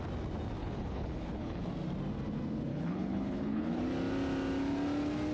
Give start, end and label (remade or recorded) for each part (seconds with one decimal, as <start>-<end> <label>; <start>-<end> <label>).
0.0-0.6 recorded; 0.6-1.7 remade; 1.7-2.7 recorded; 2.7-3.8 remade; 3.8-5.3 recorded